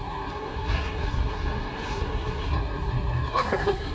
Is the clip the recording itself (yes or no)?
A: no